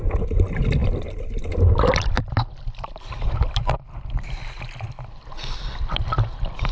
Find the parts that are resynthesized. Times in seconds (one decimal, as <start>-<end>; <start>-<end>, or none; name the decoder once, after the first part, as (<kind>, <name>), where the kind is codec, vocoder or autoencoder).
none